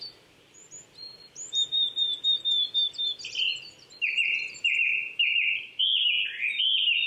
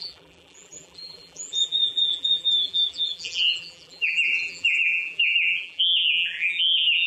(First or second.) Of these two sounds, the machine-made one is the second